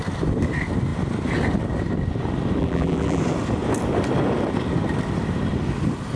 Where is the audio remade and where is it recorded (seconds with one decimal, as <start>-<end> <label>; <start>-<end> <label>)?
0.0-2.6 recorded; 2.6-3.2 remade; 3.2-6.2 recorded